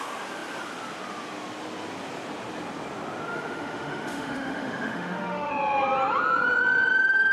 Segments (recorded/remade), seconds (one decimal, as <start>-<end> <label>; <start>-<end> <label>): 0.0-3.3 recorded; 3.3-5.5 remade; 5.5-7.3 recorded